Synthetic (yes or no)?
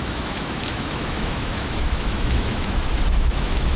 yes